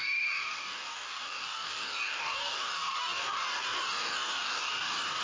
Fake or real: fake